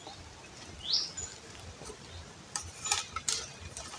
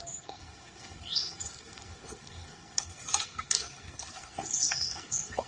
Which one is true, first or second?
first